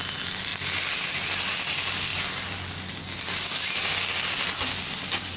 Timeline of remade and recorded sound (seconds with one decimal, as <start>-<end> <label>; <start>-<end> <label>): 0.0-5.4 recorded